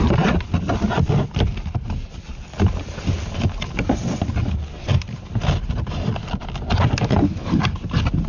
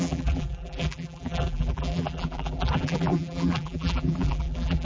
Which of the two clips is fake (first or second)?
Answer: second